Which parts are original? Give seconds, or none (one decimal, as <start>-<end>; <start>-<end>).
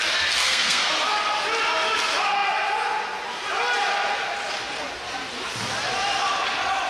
0.0-0.4; 0.9-6.9